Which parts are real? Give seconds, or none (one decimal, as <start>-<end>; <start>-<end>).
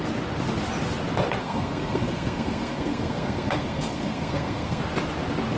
0.0-1.4; 4.8-5.6